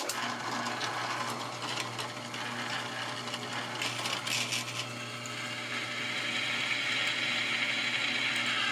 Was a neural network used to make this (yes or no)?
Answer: no